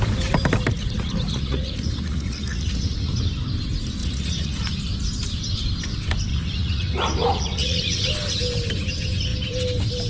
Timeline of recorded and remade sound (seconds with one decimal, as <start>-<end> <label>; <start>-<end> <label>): 0.0-0.7 recorded; 0.7-3.1 remade; 3.1-4.0 recorded; 4.0-4.7 remade; 4.7-6.3 recorded; 6.3-8.1 remade; 8.1-10.1 recorded